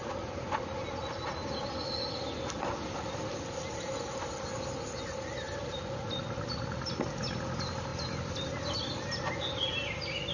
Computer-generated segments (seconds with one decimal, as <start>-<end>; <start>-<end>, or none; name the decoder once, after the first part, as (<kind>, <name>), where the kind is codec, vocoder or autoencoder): none